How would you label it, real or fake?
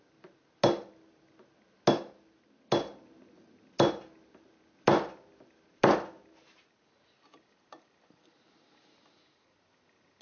real